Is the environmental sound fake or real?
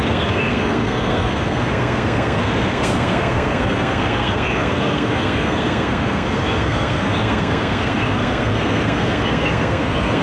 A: fake